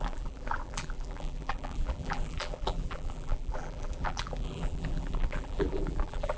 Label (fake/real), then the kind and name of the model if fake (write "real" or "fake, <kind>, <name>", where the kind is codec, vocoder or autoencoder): fake, vocoder, BigVGAN v2